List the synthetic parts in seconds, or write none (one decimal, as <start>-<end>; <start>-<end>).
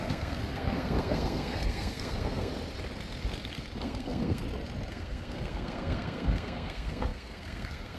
0.0-2.5; 3.8-4.4; 4.9-8.0